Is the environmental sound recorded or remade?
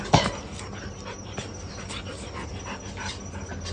recorded